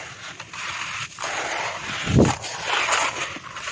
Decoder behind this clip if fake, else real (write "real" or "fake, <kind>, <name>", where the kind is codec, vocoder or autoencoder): real